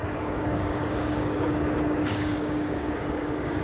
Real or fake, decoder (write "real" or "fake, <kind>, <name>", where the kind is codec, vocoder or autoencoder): fake, codec, DAC